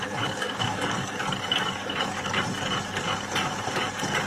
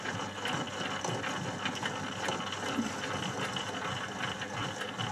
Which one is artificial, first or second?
first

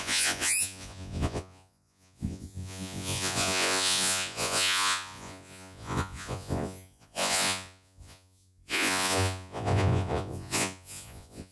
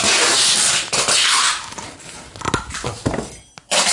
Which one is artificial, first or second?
first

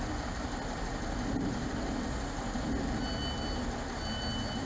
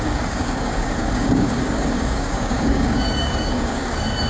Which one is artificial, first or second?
second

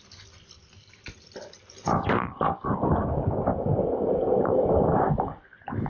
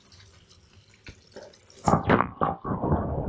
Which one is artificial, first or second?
first